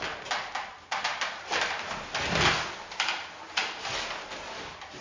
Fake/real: real